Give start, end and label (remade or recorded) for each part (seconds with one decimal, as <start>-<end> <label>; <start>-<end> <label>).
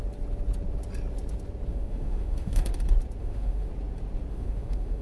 0.0-1.7 recorded; 1.7-2.7 remade; 2.7-3.2 recorded; 3.2-3.7 remade; 3.7-4.3 recorded; 4.3-5.0 remade